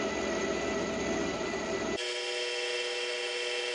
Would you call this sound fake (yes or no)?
no